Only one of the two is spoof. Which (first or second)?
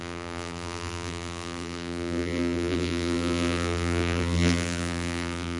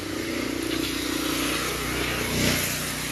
first